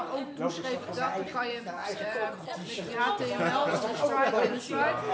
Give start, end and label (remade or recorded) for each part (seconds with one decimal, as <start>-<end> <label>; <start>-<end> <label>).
0.0-5.1 recorded